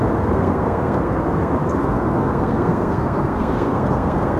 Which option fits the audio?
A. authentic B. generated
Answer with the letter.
B